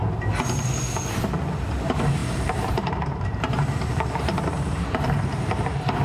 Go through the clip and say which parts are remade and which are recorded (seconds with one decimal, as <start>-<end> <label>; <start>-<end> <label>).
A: 0.0-2.2 recorded; 2.2-6.0 remade